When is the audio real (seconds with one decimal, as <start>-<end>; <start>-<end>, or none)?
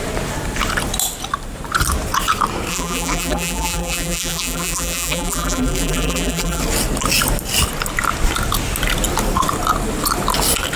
0.0-2.7; 6.6-10.8